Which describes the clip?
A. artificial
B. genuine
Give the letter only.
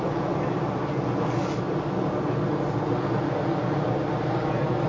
B